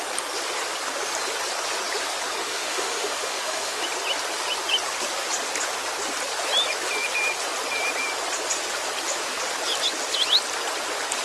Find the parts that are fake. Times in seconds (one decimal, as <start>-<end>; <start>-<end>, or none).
2.4-3.8